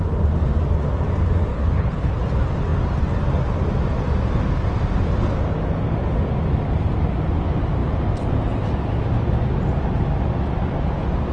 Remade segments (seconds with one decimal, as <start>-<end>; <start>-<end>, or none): 1.5-2.2